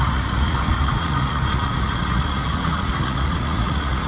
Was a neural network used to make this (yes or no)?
yes